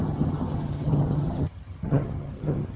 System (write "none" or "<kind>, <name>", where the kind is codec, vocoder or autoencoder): vocoder, HiFi-GAN